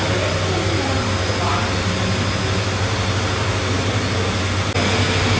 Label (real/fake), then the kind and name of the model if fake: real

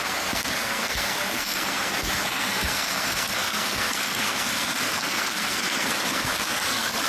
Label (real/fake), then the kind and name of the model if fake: fake, codec, SNAC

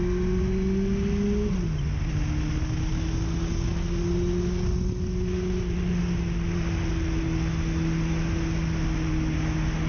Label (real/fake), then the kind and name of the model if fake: real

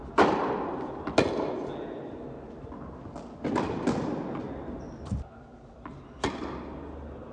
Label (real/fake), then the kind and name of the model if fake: real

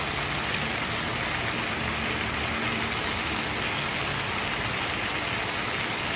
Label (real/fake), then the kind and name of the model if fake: real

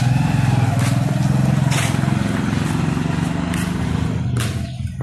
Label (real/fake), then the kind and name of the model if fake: real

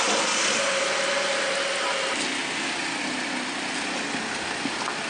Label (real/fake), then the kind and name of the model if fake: real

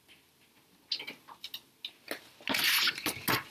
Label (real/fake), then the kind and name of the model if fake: real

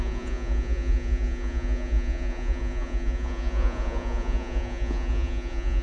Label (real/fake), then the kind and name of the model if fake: fake, vocoder, Vocos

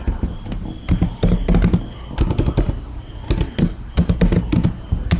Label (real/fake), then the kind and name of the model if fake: real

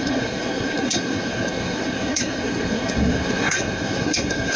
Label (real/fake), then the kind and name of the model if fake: fake, codec, SNAC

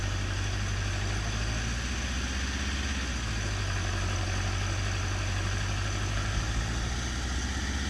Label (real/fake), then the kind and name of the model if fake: real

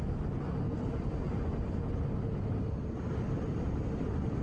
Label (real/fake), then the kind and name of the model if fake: real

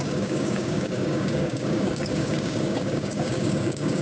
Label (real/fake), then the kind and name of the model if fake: fake, codec, DAC